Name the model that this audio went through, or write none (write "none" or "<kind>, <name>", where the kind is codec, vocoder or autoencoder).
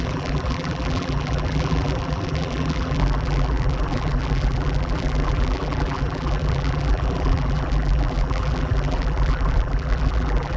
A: vocoder, BigVGAN v2